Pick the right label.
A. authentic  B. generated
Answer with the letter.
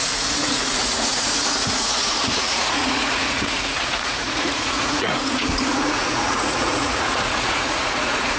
B